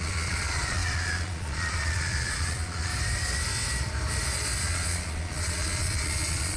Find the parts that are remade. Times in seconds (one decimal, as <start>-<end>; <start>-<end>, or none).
0.0-2.9; 4.6-6.6

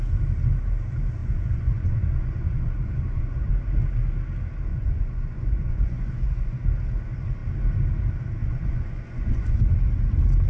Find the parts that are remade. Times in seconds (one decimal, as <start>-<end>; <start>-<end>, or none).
1.2-3.5; 4.7-6.7; 8.4-9.6

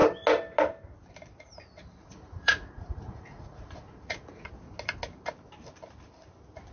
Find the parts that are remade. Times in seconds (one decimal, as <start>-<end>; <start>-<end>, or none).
2.0-4.5

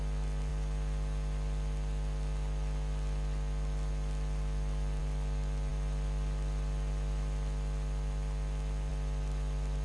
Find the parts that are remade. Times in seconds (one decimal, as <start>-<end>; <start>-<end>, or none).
none

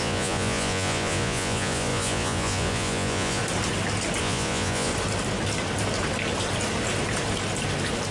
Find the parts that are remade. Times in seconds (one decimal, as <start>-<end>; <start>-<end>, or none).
0.0-3.4; 4.2-4.9

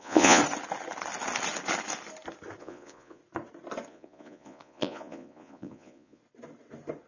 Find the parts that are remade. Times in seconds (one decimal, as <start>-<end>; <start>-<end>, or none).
0.0-0.4; 2.6-3.2; 3.9-6.2